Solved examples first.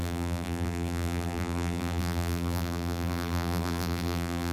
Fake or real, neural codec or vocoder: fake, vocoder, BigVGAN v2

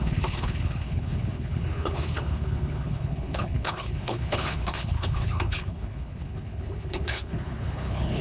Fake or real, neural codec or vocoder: fake, codec, HILCodec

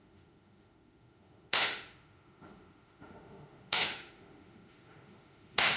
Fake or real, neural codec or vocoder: fake, autoencoder, DAC-VAE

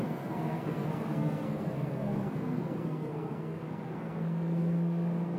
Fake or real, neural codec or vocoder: fake, codec, SNAC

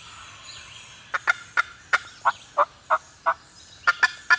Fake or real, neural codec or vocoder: real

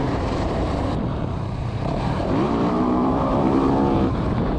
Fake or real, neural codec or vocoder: fake, vocoder, BigVGAN v2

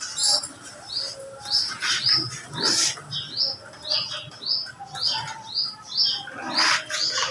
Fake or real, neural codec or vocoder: real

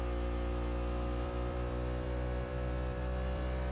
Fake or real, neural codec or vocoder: fake, vocoder, BigVGAN v2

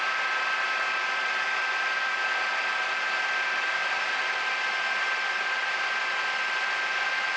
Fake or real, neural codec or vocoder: real